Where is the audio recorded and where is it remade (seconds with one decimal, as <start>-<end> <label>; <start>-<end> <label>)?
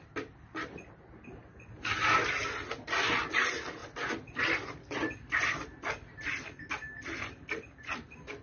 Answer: 0.0-8.4 recorded